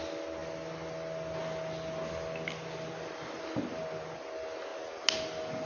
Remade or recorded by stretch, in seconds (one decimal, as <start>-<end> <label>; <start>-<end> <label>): 0.0-5.7 recorded

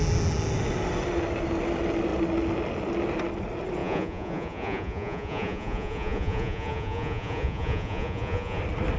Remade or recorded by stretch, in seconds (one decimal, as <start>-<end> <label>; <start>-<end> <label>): 0.0-3.8 recorded; 3.8-8.6 remade; 8.6-9.0 recorded

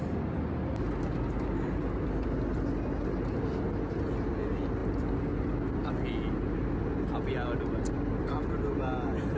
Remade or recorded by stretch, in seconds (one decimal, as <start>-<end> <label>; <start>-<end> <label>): 0.0-9.4 recorded

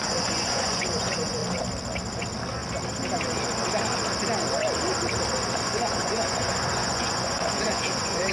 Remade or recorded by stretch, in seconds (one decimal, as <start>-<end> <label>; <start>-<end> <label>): 0.0-1.4 remade; 1.4-5.6 recorded; 5.6-8.3 remade

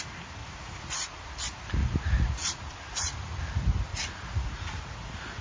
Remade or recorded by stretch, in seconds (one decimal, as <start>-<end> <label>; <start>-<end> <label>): 0.0-0.4 recorded; 0.4-1.3 remade; 1.3-1.8 recorded; 1.8-3.4 remade; 3.4-3.9 recorded; 3.9-5.4 remade

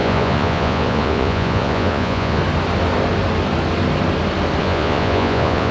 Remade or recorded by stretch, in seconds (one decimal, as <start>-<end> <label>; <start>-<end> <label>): 0.0-2.4 remade; 2.4-4.6 recorded; 4.6-5.7 remade